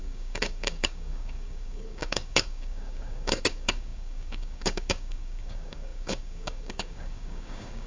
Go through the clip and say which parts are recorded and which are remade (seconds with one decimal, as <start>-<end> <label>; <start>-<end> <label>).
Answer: 0.0-7.9 remade